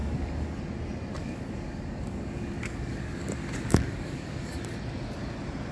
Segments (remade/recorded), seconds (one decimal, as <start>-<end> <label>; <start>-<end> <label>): 0.0-0.6 remade; 0.6-1.2 recorded; 1.2-4.6 remade; 4.6-5.7 recorded